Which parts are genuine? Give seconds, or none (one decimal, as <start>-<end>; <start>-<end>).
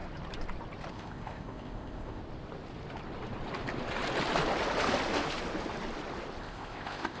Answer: 0.0-0.9; 2.2-6.4